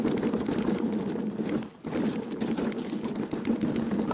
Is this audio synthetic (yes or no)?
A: no